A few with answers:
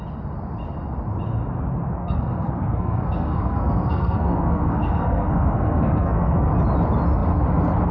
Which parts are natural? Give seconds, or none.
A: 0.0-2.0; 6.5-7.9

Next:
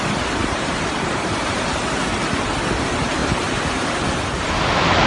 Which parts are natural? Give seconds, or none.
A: 0.0-0.4; 1.8-3.2; 4.6-5.1